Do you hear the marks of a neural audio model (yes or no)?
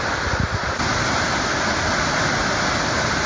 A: no